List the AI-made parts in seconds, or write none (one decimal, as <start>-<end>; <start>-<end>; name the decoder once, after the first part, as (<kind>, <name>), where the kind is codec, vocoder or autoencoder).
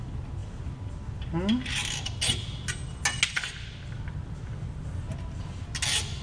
none